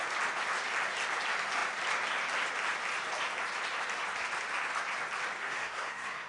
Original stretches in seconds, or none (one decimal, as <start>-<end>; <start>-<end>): 0.0-5.4